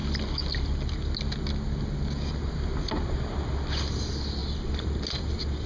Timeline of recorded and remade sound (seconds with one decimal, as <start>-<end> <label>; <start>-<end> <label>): 0.0-5.7 recorded